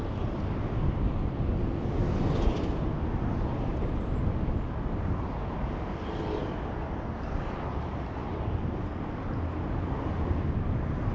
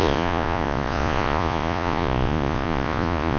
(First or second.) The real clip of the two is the first